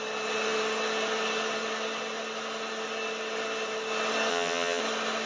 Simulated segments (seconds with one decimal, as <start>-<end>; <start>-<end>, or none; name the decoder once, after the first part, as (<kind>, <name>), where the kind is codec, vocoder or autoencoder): 4.3-4.8 (vocoder, HiFi-GAN)